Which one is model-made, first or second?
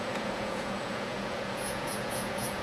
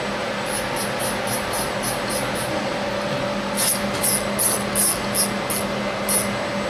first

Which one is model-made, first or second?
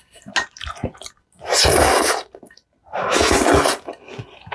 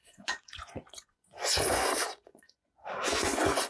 second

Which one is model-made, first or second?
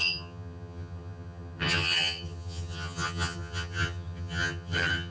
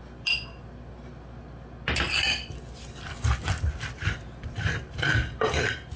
first